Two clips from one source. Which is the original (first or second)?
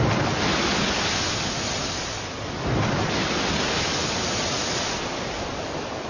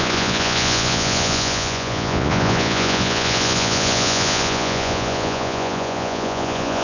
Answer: first